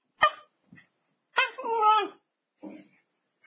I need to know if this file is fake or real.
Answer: real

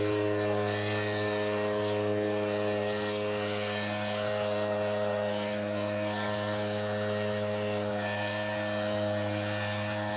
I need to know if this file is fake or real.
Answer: real